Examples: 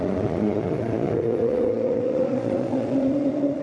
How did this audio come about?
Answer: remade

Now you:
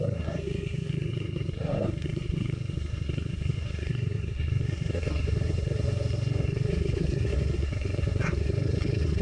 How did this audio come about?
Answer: remade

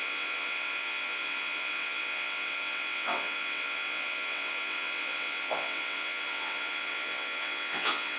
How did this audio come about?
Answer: remade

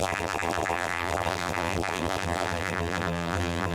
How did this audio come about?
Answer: remade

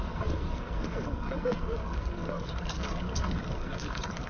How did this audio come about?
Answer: remade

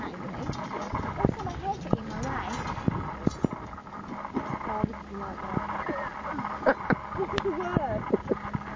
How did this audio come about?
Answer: recorded